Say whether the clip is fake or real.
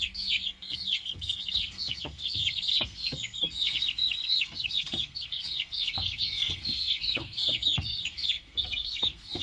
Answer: fake